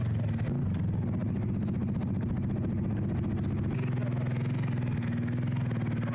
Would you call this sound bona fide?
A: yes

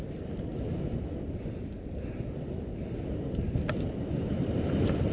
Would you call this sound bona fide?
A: yes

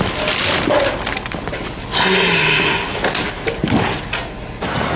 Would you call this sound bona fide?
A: yes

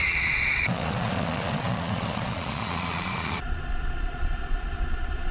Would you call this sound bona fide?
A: no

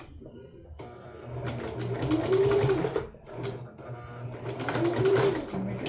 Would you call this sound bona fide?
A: yes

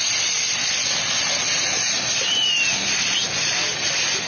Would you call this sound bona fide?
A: yes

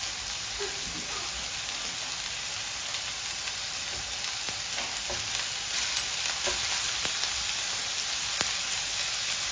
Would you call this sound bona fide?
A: yes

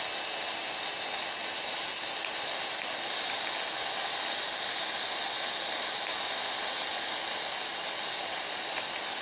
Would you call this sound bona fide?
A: yes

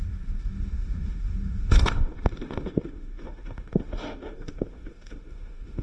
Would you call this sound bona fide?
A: no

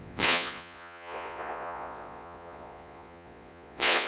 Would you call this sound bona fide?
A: no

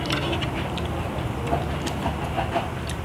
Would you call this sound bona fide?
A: yes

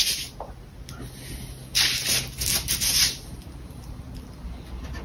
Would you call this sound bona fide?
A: yes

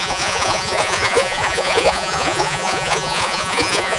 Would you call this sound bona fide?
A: no